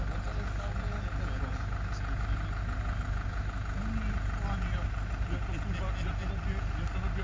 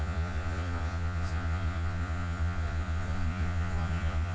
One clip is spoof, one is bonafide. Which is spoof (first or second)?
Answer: second